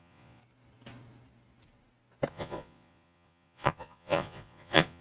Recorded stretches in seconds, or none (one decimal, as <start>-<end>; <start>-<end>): 0.4-2.3